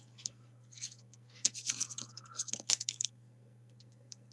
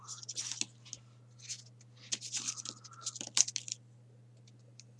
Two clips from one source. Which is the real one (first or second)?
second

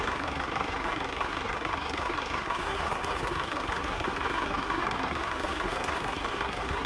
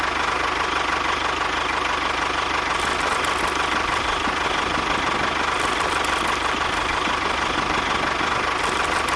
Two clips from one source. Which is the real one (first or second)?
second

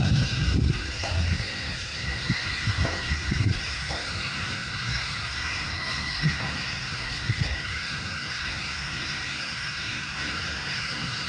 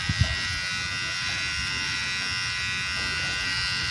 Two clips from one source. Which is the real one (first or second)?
second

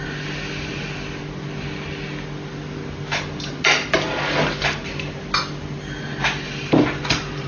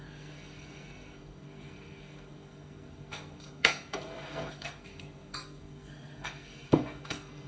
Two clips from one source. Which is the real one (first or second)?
first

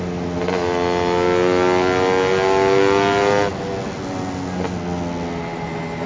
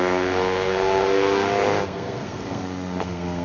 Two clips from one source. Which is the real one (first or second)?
first